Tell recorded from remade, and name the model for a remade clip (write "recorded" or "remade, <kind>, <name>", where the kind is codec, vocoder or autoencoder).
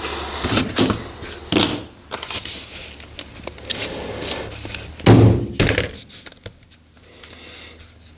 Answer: recorded